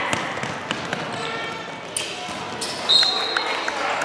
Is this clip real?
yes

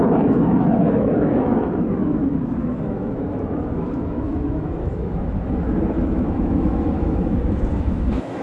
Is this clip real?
no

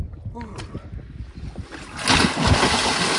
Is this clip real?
yes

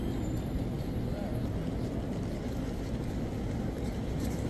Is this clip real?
yes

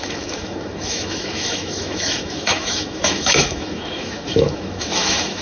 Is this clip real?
no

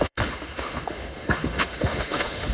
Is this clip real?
no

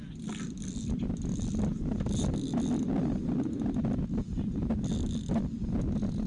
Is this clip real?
yes